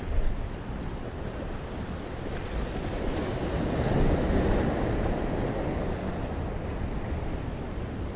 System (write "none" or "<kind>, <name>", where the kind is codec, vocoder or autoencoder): none